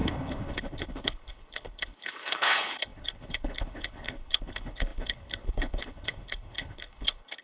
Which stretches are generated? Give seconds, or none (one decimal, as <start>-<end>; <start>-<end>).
0.0-7.4